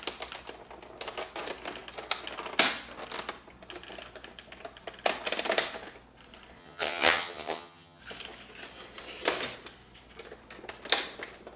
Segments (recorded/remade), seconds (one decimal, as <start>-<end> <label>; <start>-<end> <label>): 0.0-6.6 recorded; 6.6-8.0 remade; 8.0-11.6 recorded